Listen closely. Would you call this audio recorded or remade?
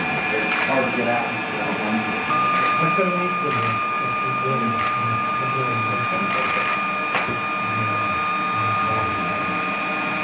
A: recorded